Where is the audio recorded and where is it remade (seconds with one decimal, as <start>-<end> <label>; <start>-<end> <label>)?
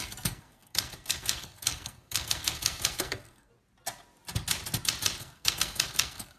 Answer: 0.0-3.5 remade; 3.5-5.2 recorded; 5.2-6.4 remade